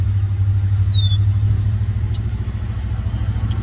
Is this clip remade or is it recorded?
recorded